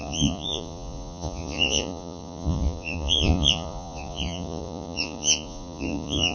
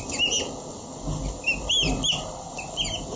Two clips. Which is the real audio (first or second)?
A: second